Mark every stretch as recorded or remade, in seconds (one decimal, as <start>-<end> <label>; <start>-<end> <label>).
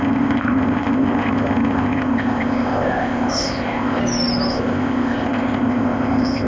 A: 0.0-4.0 remade; 4.0-4.5 recorded; 4.5-6.5 remade